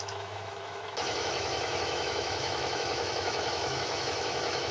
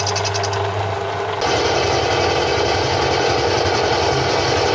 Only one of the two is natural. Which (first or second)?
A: second